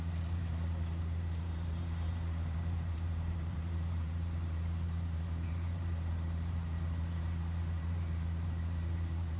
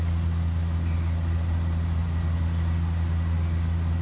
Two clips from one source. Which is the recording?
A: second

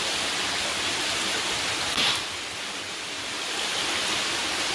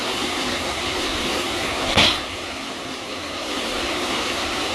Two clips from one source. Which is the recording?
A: first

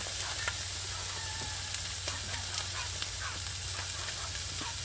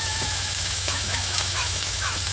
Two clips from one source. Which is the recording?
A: first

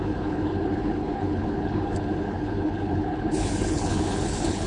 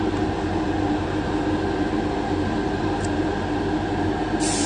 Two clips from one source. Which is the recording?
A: second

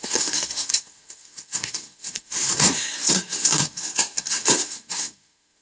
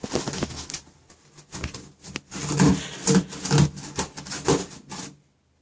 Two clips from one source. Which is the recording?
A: second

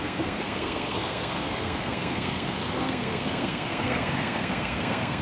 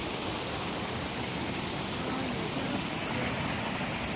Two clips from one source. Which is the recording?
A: second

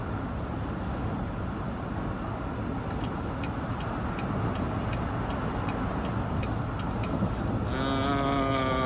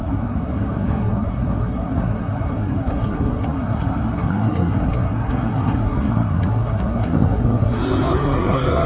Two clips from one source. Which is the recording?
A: first